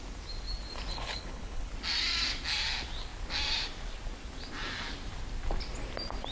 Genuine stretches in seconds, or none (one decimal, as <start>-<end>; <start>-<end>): 0.0-0.9; 1.7-6.3